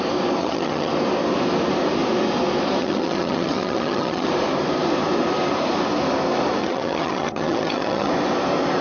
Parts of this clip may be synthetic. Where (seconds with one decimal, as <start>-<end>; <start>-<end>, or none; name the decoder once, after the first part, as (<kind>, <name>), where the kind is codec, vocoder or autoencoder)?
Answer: 0.4-0.9 (vocoder, HiFi-GAN); 2.8-4.3; 6.6-8.1